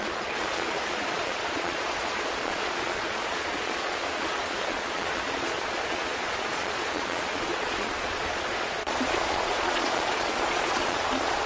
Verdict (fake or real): fake